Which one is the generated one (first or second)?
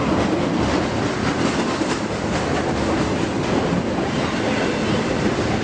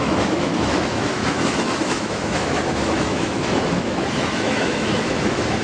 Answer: second